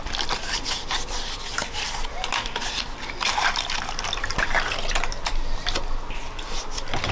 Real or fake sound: real